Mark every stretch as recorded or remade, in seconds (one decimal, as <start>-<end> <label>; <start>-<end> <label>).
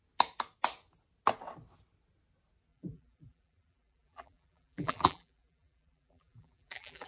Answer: 0.0-2.7 recorded; 2.7-7.1 remade